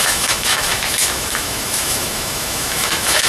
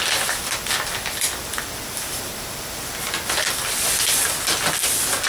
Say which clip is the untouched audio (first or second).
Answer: second